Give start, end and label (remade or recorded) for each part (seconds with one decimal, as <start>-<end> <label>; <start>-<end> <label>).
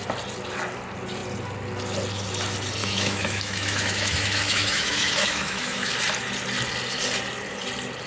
0.0-2.8 recorded; 2.8-5.9 remade; 5.9-8.1 recorded